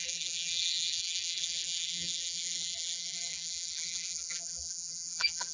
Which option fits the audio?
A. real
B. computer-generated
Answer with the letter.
B